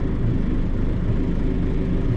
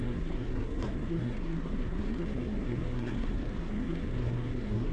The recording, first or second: first